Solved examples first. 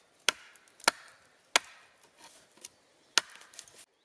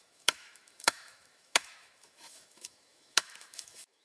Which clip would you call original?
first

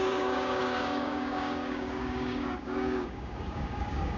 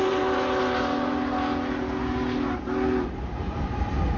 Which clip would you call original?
second